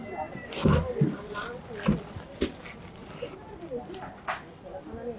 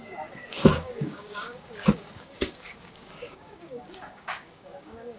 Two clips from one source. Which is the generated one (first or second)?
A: second